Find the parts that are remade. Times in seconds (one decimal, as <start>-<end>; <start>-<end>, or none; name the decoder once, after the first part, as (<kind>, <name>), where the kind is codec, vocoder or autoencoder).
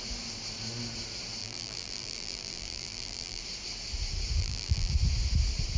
1.4-3.4 (vocoder, BigVGAN v2); 4.4-4.9